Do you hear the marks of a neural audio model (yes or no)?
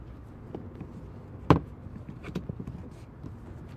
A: no